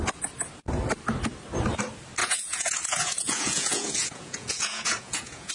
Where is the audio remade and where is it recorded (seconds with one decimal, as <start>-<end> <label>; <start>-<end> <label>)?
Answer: 0.0-2.2 recorded; 2.2-5.5 remade